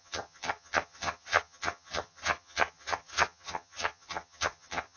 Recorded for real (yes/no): no